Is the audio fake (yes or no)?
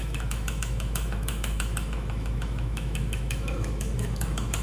yes